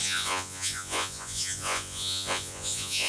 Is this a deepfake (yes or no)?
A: yes